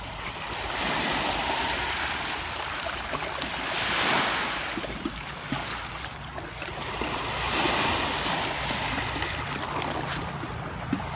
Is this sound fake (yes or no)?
no